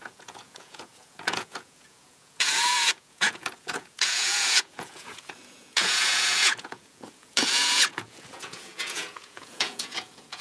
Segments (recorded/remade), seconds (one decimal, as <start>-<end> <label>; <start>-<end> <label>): 0.0-10.4 remade